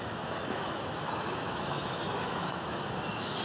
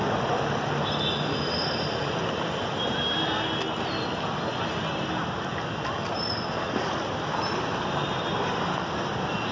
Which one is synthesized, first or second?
first